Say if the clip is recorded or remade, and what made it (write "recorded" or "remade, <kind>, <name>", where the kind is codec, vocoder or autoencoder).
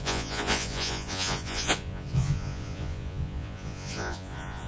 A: remade, vocoder, Vocos